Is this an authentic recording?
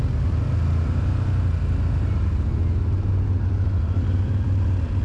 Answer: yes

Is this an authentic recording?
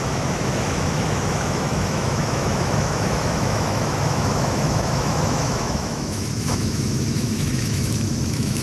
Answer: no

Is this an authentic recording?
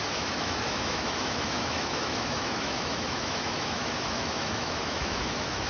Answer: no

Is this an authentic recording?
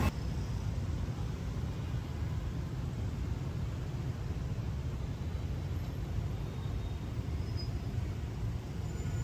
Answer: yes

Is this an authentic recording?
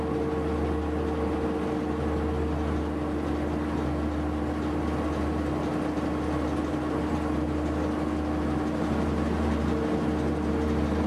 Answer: yes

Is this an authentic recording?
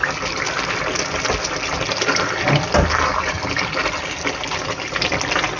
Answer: yes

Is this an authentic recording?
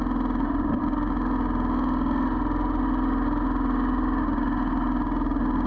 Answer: yes